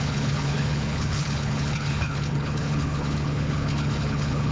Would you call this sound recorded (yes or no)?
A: no